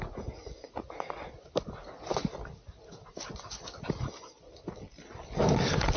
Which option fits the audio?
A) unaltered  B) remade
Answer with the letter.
A